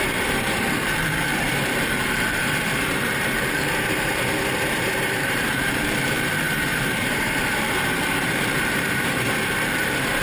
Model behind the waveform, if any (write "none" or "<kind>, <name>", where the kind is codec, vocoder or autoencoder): vocoder, BigVGAN v2